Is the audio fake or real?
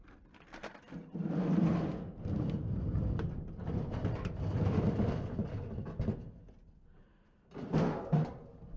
real